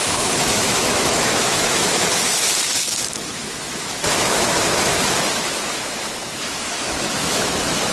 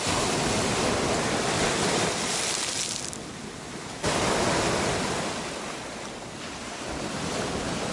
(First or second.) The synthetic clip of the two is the first